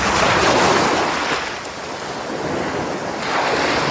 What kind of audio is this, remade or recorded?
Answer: recorded